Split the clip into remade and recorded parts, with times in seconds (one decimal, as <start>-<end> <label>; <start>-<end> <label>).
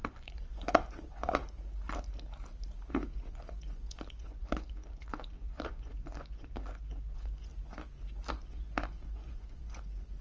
0.0-1.4 remade; 1.4-2.9 recorded; 2.9-7.5 remade; 7.5-8.3 recorded; 8.3-10.2 remade